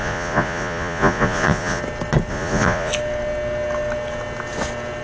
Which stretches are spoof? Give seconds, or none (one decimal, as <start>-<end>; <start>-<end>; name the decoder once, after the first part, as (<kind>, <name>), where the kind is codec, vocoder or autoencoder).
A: 0.0-1.8 (vocoder, Vocos); 2.3-2.9